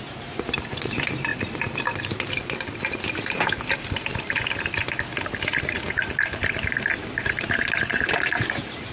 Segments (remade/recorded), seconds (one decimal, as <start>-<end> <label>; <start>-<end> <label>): 0.0-1.3 remade; 1.3-5.6 recorded; 5.6-8.9 remade